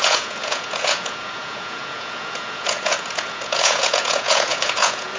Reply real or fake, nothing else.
fake